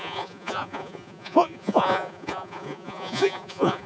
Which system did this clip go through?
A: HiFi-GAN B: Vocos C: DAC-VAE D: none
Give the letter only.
B